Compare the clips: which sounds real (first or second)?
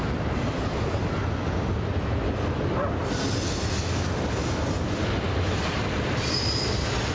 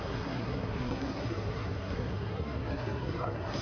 first